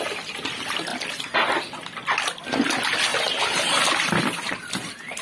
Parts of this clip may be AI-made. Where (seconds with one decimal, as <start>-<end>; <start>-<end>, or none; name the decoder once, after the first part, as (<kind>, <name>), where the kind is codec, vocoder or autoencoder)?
0.0-0.9 (vocoder, BigVGAN v2); 2.4-3.1; 3.8-5.2